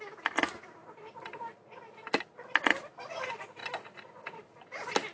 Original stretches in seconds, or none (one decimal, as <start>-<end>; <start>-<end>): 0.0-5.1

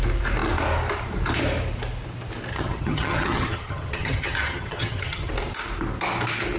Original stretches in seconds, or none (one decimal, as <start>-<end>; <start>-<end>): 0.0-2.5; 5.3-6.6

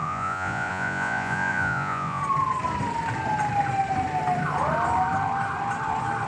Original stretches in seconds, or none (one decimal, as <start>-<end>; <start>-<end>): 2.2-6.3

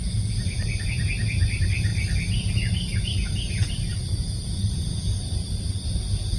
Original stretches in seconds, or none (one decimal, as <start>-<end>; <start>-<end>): 0.0-0.4; 1.0-6.4

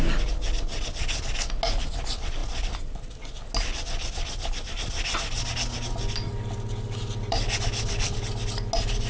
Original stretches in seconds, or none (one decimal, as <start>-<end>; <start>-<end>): 0.0-6.3; 8.2-9.1

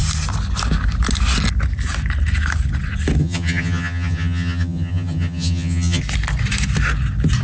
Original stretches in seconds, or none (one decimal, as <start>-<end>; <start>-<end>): 0.0-3.2; 6.0-7.4

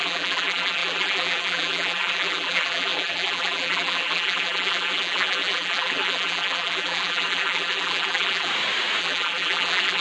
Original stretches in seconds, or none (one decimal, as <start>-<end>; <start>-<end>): 8.5-9.0